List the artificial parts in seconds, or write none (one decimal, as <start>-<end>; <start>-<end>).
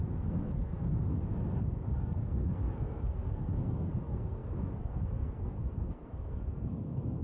0.0-7.2